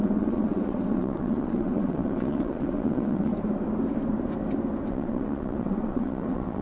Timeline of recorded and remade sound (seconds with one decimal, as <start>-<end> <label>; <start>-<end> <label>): 0.0-3.3 remade; 3.3-4.9 recorded; 4.9-6.6 remade